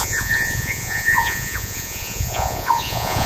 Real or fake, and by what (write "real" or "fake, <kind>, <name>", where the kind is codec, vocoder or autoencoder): fake, vocoder, Vocos